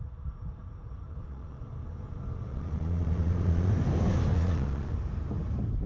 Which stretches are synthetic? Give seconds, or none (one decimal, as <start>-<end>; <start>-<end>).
1.1-1.6; 2.5-3.7; 4.3-4.9

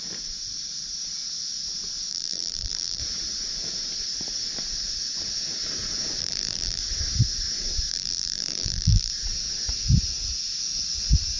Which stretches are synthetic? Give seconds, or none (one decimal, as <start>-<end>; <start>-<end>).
2.1-3.0; 6.2-6.8; 7.9-9.1